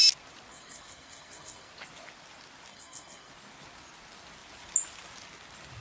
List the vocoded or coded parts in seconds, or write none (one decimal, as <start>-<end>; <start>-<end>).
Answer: 0.5-1.7; 2.7-3.3